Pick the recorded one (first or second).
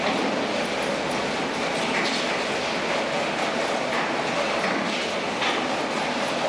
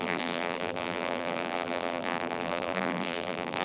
first